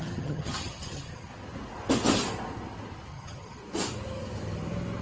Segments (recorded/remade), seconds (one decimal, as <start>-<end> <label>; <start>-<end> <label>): 0.0-1.3 remade; 1.3-3.1 recorded; 3.1-3.6 remade; 3.6-5.0 recorded